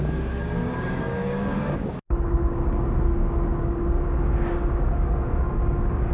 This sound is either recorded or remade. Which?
remade